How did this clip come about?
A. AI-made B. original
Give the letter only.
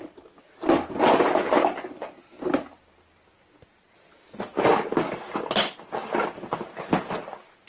B